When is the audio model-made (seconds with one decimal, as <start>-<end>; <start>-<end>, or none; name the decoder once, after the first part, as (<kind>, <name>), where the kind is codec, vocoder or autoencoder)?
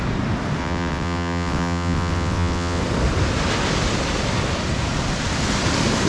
0.6-2.8 (vocoder, WaveNeXt)